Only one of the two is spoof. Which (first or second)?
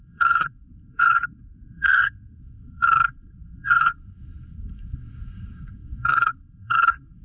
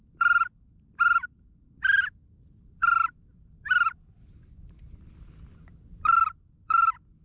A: first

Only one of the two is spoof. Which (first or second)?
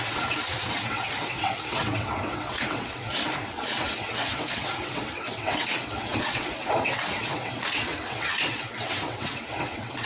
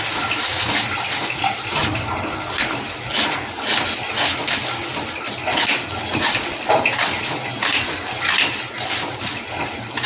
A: first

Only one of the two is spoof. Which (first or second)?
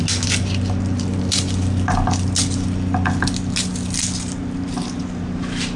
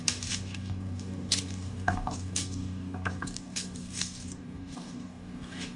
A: second